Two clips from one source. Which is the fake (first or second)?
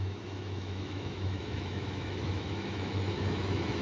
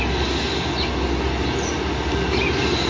first